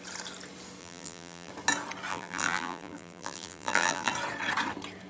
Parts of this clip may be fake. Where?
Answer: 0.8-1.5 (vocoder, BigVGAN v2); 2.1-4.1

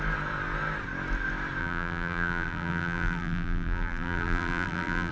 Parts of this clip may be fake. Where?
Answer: 1.6-5.1 (vocoder, BigVGAN v2)

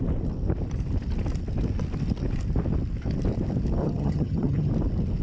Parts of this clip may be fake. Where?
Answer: 3.8-4.7 (vocoder, HiFi-GAN)

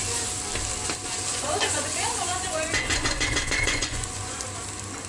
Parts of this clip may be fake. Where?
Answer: 1.3-4.4 (vocoder, Vocos)